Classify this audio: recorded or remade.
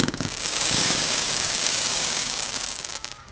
remade